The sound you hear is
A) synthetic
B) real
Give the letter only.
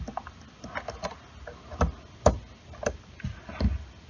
B